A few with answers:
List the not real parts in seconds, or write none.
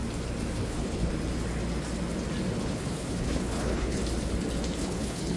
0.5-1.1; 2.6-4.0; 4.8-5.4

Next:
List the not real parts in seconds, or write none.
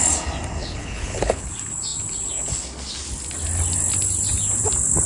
0.6-1.5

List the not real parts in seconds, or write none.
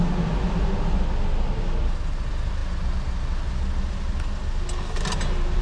none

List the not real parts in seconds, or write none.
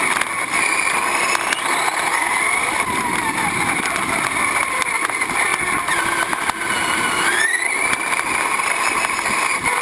none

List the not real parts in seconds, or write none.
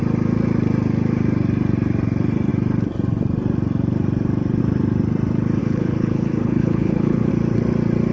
5.6-7.3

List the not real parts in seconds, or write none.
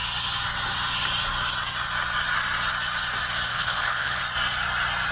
3.5-4.2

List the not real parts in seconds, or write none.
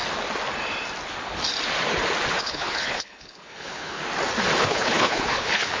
2.4-4.0; 4.6-5.8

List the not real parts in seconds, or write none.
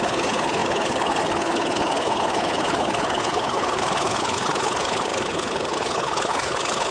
0.0-6.9